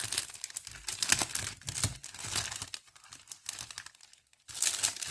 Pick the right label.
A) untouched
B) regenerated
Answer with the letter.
A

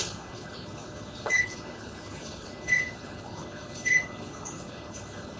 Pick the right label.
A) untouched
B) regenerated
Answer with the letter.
B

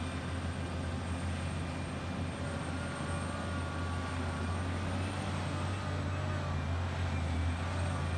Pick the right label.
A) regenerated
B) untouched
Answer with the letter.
B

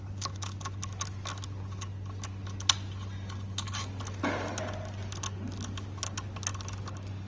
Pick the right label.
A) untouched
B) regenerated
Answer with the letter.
A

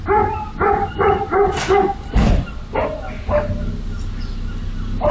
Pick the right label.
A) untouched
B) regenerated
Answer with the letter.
A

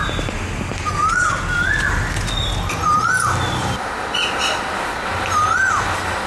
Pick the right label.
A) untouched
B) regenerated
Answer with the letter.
A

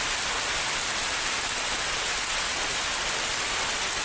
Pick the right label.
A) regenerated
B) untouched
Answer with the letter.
B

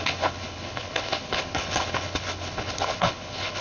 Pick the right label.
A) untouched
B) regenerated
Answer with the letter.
B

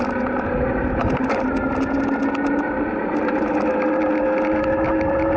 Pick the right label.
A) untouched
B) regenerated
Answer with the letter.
A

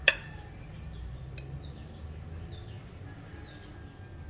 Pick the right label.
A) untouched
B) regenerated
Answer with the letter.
A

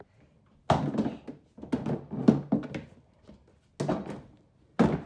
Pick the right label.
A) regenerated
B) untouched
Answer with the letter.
B